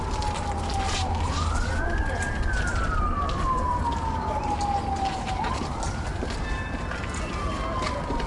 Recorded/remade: recorded